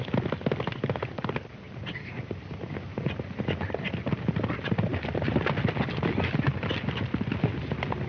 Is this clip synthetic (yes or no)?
no